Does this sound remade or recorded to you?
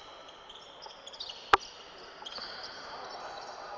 recorded